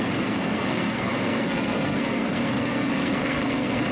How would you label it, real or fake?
fake